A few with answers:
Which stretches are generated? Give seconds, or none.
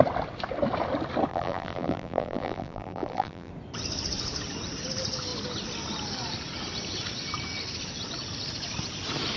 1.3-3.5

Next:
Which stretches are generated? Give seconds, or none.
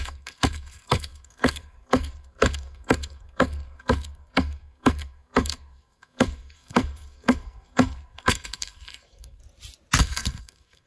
0.0-9.4; 10.0-10.9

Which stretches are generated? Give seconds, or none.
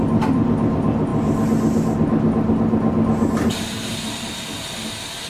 none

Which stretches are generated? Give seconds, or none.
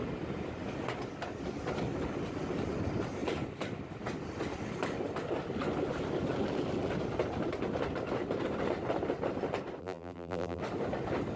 9.8-10.6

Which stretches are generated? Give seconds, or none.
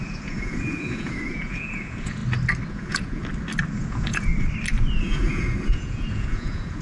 0.0-2.2; 2.7-3.2; 3.8-4.3; 5.0-6.8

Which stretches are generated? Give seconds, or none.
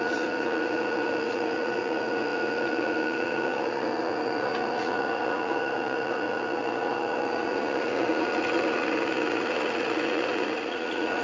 0.0-11.2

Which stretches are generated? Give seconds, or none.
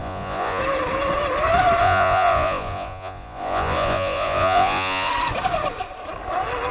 0.0-0.6; 1.8-5.1